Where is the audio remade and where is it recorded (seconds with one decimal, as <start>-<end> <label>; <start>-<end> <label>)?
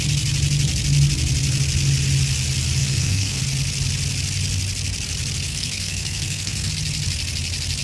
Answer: 0.0-2.8 recorded; 2.8-3.4 remade; 3.4-5.5 recorded; 5.5-6.7 remade; 6.7-7.8 recorded